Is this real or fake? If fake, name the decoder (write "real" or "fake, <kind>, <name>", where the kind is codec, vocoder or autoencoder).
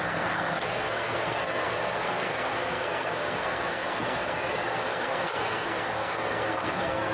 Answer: fake, codec, SNAC